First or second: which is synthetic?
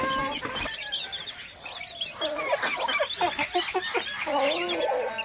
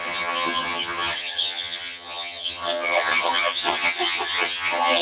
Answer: second